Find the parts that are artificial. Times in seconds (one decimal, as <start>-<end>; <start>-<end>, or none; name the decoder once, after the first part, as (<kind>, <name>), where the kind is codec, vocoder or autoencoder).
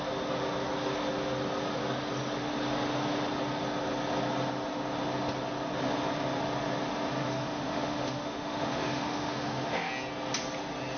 7.2-9.9 (autoencoder, DAC-VAE)